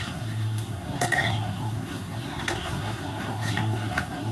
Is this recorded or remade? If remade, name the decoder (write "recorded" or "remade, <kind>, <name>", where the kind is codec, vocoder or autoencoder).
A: remade, codec, SNAC